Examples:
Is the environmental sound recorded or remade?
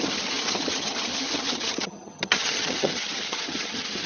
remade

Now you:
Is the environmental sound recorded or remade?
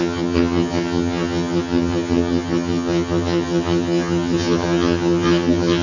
remade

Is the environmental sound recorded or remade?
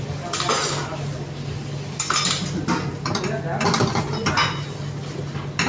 recorded